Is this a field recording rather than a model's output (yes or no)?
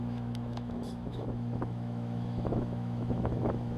no